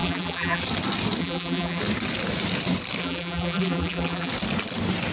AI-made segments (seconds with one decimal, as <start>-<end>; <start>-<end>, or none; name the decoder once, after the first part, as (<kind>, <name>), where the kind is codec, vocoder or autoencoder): 0.0-0.6 (vocoder, BigVGAN v2); 1.2-1.8; 3.0-4.3